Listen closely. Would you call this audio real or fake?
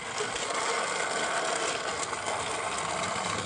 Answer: real